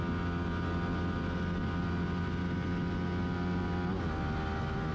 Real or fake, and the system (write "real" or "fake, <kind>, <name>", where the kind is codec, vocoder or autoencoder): real